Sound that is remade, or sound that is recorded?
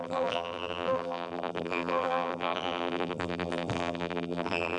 remade